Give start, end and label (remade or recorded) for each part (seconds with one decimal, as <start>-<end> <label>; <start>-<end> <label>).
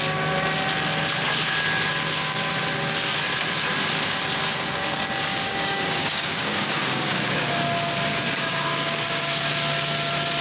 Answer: 0.0-5.3 recorded; 5.3-7.5 remade; 7.5-8.1 recorded; 8.1-9.5 remade; 9.5-10.4 recorded